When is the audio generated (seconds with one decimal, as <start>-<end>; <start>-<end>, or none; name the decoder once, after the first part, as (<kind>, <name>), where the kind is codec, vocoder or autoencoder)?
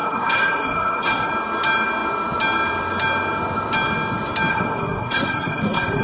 0.0-1.3 (codec, SNAC); 4.5-6.0